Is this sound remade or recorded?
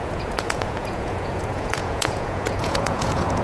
remade